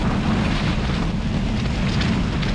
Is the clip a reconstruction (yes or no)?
no